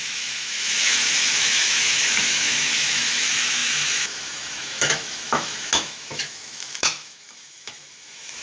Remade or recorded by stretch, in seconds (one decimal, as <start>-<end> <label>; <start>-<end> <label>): 0.0-8.4 remade